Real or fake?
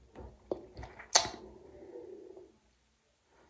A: real